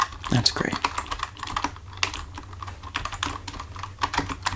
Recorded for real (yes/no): yes